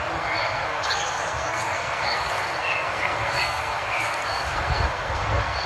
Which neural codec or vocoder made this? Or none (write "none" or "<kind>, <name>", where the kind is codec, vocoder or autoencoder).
codec, SNAC